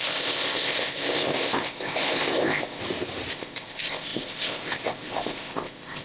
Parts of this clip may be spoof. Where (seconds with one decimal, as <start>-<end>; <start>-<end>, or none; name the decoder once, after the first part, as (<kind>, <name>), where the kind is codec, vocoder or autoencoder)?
0.0-2.8 (codec, ZipCodec); 3.3-6.0

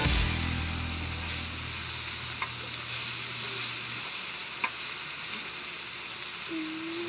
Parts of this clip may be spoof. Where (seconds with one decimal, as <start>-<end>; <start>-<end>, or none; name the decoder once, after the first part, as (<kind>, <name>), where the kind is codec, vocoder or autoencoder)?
none

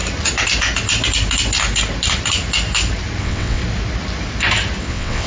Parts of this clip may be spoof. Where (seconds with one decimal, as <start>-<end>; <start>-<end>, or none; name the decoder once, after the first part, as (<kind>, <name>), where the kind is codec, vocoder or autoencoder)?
3.2-3.6 (vocoder, WaveNeXt); 4.8-5.3

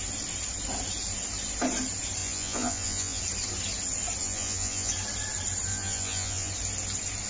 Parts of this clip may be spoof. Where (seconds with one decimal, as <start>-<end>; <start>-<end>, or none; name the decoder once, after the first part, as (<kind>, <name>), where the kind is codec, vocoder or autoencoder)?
2.2-3.2 (vocoder, Vocos); 4.2-4.9; 5.7-6.5

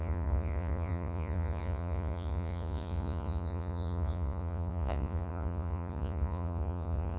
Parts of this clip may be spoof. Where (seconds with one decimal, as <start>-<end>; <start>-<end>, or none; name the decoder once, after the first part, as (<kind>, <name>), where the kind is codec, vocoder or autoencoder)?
0.0-7.2 (vocoder, Vocos)